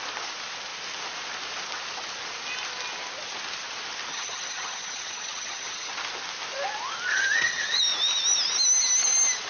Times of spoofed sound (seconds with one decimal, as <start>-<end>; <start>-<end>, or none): 4.1-5.9; 7.1-7.8